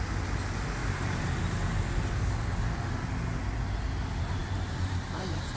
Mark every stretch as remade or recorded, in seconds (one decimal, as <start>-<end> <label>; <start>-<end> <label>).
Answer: 0.0-0.8 recorded; 0.8-1.4 remade; 1.4-4.4 recorded; 4.4-5.6 remade